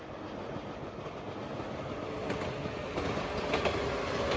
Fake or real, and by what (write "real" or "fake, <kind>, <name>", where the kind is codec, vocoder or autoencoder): real